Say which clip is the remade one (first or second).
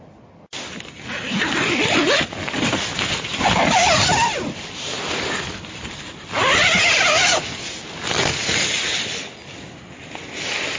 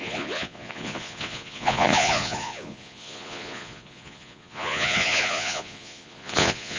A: second